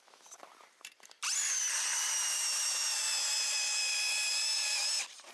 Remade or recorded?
recorded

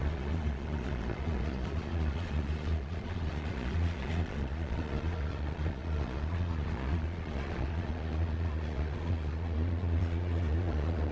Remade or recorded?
remade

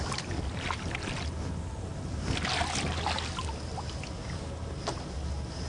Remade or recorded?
recorded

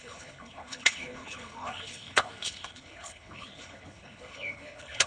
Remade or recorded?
remade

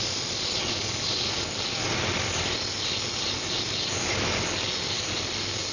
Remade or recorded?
recorded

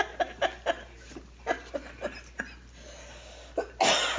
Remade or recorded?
recorded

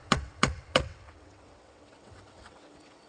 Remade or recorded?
remade